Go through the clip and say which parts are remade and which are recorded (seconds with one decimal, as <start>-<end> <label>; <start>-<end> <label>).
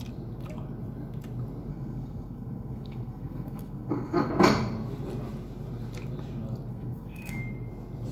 0.0-1.7 recorded; 1.7-4.3 remade; 4.3-6.7 recorded; 6.7-7.4 remade; 7.4-8.1 recorded